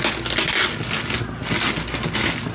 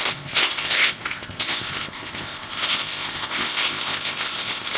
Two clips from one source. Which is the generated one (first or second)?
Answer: second